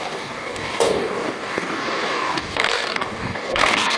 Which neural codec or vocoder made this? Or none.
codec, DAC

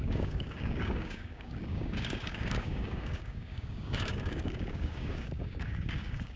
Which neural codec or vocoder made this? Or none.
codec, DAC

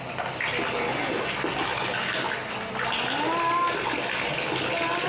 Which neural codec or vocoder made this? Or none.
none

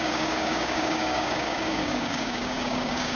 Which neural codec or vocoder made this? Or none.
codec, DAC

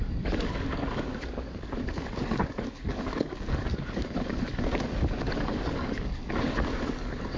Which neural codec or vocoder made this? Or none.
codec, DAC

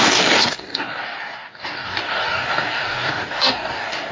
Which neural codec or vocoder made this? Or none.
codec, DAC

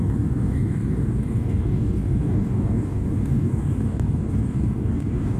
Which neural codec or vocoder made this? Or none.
codec, DAC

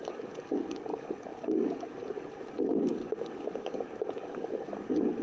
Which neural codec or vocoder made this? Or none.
codec, DAC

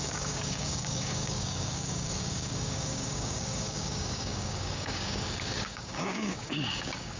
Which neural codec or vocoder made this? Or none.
codec, DAC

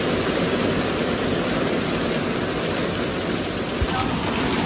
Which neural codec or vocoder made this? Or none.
none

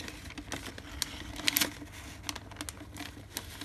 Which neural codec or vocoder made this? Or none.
none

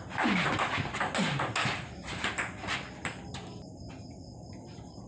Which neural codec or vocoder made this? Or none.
none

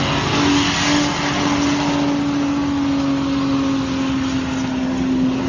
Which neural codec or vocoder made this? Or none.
none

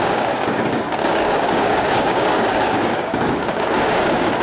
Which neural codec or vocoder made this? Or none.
codec, DAC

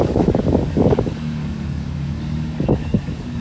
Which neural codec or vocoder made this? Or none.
codec, DAC